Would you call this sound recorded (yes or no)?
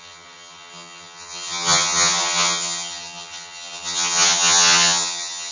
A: no